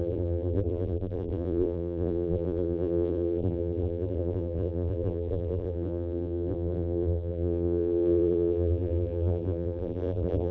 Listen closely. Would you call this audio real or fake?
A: fake